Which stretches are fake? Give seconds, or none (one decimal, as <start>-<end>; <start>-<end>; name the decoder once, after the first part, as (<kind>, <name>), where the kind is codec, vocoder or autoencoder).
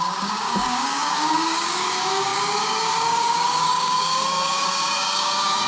0.0-5.7 (codec, DAC)